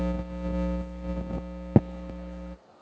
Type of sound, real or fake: real